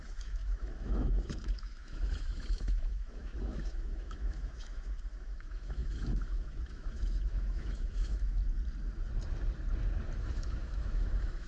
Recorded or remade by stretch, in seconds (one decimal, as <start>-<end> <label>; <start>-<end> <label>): 0.0-8.4 remade; 8.4-10.2 recorded; 10.2-11.5 remade